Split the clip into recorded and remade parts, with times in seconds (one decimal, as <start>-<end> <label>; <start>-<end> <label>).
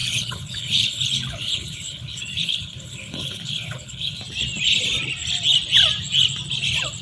0.0-4.2 remade; 4.2-7.0 recorded